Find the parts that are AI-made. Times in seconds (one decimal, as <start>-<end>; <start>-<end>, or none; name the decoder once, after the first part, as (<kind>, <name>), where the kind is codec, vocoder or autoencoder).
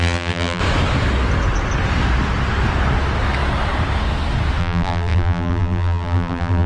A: 0.0-0.6 (vocoder, BigVGAN v2); 4.6-6.7